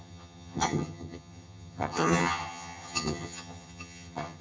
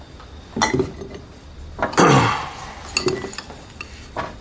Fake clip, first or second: first